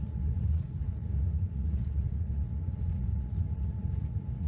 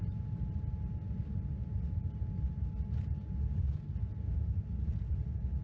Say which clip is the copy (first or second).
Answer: first